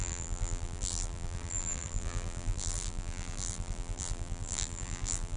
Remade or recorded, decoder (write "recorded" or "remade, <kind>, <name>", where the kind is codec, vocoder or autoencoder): remade, vocoder, BigVGAN v2